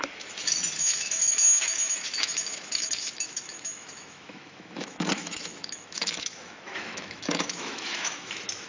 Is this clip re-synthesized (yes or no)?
yes